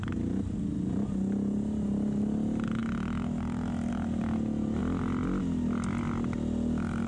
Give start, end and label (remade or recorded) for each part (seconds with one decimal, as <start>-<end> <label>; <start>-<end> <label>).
0.0-7.1 recorded